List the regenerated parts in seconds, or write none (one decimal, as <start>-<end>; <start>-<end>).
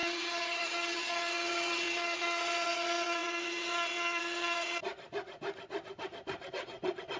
0.0-4.8; 6.5-7.2